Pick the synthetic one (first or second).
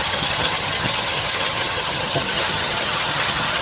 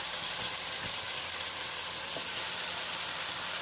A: first